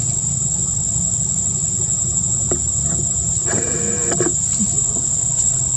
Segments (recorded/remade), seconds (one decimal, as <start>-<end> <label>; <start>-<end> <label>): 0.0-4.8 recorded; 4.8-5.8 remade